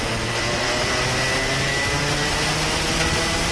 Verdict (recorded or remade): recorded